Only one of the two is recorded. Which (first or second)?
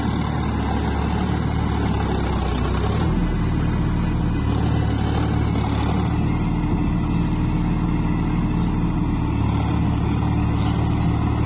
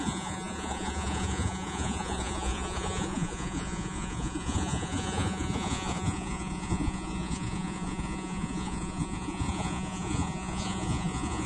first